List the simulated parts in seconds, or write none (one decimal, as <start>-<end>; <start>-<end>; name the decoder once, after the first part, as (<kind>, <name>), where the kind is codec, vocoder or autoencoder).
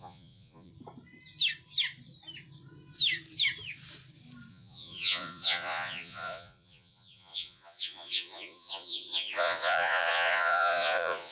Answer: 0.0-0.7 (vocoder, Vocos); 4.5-11.3